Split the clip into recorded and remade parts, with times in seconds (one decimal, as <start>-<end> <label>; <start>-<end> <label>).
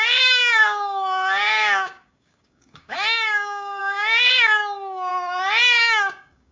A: 0.0-5.1 remade; 5.1-5.8 recorded; 5.8-6.5 remade